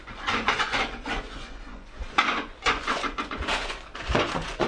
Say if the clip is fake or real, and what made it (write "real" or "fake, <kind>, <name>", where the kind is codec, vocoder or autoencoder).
fake, vocoder, Vocos